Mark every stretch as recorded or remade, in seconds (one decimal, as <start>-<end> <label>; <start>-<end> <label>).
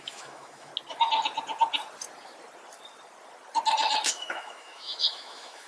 0.0-0.7 remade; 0.7-4.1 recorded; 4.1-5.7 remade